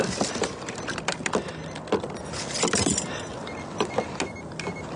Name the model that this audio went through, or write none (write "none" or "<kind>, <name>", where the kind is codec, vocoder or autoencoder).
none